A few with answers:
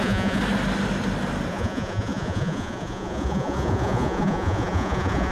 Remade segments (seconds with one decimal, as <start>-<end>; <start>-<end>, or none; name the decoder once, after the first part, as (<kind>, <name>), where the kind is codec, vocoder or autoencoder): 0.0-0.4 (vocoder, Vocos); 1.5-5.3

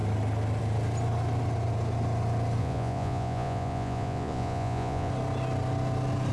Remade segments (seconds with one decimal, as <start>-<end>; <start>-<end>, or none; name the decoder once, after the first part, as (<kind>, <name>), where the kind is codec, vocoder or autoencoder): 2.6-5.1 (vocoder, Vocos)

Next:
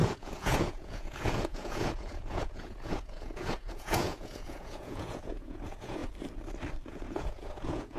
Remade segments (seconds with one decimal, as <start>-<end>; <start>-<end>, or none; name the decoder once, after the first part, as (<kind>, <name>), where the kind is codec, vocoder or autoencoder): 0.0-6.0 (vocoder, Vocos); 6.9-8.0

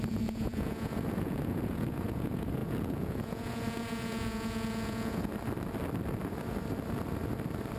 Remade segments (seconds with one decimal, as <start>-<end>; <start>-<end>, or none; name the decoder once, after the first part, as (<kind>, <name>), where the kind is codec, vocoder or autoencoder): 0.0-5.3 (vocoder, Vocos)

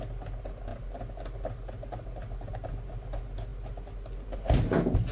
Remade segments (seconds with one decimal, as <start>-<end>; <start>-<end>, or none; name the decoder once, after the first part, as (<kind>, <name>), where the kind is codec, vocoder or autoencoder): none

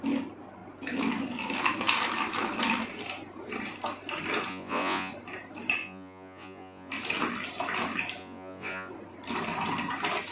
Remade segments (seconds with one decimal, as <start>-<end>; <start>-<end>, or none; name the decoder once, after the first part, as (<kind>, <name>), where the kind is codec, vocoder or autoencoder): 4.5-5.1 (vocoder, Vocos); 5.8-6.9; 8.2-8.9

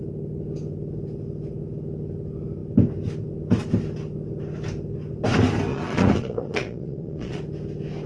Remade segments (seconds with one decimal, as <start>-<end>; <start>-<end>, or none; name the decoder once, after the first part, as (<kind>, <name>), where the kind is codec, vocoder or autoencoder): 5.7-7.4 (vocoder, Vocos)